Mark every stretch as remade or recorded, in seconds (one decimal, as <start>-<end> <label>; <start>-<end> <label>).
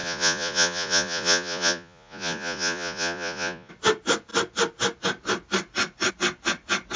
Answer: 0.0-3.7 remade; 3.7-7.0 recorded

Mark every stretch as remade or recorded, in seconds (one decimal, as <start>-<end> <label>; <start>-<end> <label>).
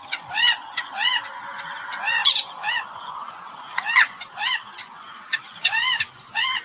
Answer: 0.0-6.6 remade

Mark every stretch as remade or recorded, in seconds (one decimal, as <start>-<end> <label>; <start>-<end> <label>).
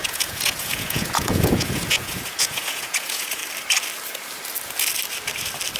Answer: 0.0-3.4 remade; 3.4-5.8 recorded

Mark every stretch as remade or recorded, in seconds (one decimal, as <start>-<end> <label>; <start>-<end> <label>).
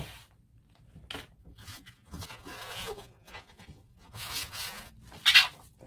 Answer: 0.0-1.4 recorded; 1.4-4.9 remade; 4.9-5.9 recorded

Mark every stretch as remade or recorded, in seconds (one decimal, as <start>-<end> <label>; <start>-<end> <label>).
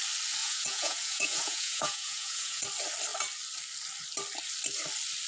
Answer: 0.0-0.4 recorded; 0.4-2.6 remade; 2.6-5.3 recorded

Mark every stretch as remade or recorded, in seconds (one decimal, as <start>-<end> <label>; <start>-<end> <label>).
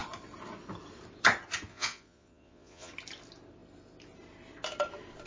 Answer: 0.0-1.7 recorded; 1.7-2.9 remade; 2.9-5.3 recorded